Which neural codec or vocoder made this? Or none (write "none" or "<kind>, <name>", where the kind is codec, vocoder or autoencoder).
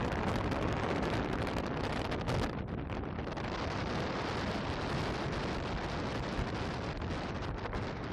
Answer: none